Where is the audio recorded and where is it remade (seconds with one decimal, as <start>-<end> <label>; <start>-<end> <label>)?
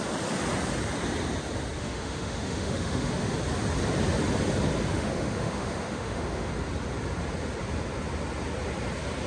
0.0-1.8 recorded; 1.8-3.3 remade; 3.3-4.9 recorded; 4.9-6.5 remade; 6.5-9.3 recorded